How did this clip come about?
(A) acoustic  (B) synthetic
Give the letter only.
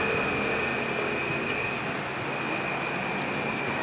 A